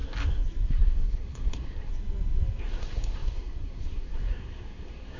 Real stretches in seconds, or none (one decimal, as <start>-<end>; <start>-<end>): 0.0-0.7; 1.9-2.6